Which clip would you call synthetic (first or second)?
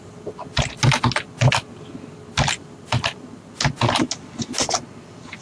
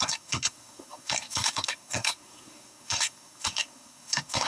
second